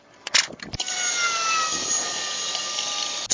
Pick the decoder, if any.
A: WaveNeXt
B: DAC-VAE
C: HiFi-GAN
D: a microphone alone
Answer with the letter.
D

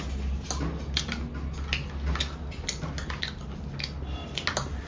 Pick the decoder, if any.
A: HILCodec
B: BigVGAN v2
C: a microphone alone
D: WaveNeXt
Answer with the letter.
C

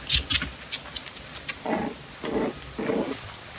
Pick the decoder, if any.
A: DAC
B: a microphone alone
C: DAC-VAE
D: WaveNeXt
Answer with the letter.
B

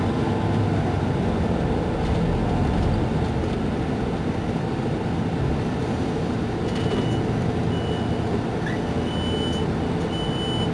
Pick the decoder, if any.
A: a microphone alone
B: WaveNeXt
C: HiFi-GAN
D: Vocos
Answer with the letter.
A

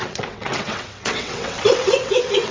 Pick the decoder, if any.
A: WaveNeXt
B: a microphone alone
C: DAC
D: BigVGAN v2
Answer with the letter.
A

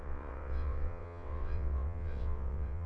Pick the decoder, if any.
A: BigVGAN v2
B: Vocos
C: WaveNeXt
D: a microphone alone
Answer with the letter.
C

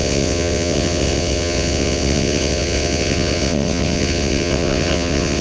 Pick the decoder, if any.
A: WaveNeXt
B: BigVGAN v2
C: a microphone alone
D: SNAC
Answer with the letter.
A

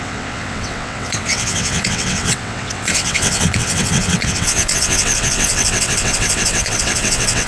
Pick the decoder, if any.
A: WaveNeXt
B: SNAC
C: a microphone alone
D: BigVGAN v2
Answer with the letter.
A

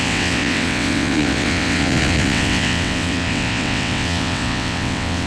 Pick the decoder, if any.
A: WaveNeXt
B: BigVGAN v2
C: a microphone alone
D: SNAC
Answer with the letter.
A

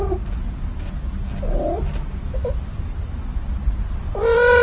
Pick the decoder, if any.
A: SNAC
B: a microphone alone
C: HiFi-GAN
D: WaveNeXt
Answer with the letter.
B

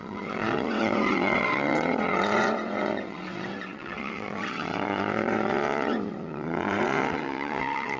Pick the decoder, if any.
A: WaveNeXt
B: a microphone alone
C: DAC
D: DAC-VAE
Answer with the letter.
A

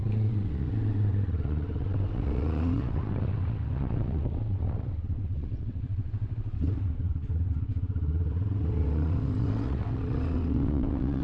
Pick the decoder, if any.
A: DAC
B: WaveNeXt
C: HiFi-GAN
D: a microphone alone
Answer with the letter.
B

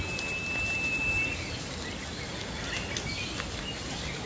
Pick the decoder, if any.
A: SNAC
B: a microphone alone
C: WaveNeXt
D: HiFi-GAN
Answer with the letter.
B